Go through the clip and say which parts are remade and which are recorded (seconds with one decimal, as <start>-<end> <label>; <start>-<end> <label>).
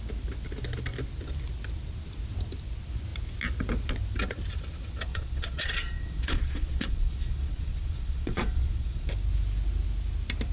0.0-5.1 recorded; 5.1-9.1 remade; 9.1-10.5 recorded